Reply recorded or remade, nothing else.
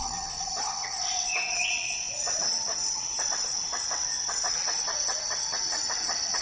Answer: remade